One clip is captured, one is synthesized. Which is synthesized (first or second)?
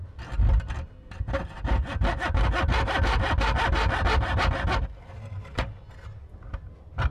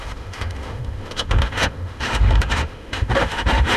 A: second